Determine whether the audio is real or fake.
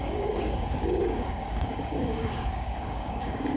fake